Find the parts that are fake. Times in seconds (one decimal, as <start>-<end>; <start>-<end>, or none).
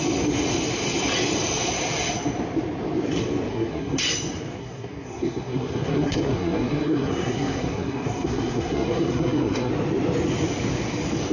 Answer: 3.5-4.0; 4.6-9.7